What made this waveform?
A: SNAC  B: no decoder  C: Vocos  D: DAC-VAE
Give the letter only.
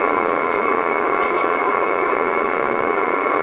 C